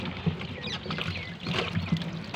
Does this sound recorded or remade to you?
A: recorded